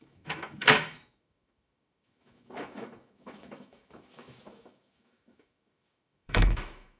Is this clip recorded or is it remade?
remade